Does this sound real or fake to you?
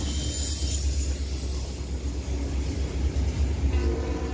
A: real